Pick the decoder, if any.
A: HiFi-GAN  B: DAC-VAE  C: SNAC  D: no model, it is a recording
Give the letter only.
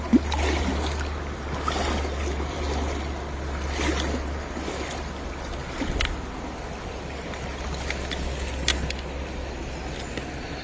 D